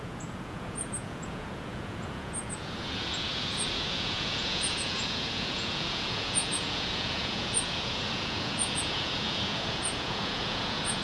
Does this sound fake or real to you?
fake